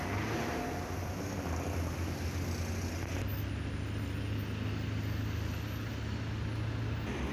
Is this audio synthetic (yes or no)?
no